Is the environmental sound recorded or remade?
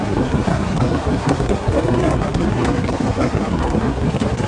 remade